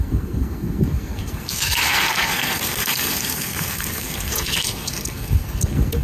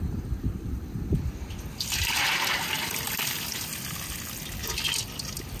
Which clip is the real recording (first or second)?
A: second